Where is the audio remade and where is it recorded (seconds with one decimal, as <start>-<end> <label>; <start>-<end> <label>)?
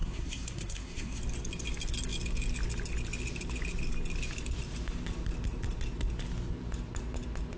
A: 0.0-1.2 remade; 1.2-7.6 recorded